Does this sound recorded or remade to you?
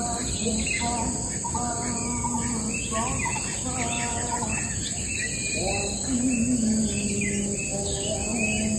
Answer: recorded